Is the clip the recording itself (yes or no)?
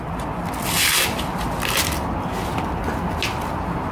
yes